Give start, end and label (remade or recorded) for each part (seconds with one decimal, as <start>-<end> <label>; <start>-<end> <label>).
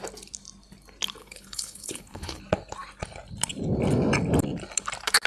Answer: 0.0-1.2 recorded; 1.2-2.4 remade; 2.4-5.3 recorded